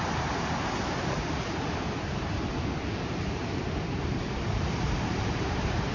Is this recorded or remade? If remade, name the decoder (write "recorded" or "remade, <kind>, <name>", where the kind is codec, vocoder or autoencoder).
remade, vocoder, BigVGAN v2